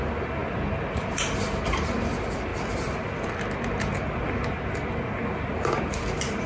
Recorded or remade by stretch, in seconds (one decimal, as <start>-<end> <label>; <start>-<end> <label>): 0.0-6.5 recorded